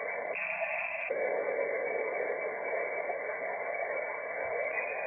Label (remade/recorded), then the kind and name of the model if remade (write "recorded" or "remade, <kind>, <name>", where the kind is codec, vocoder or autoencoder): recorded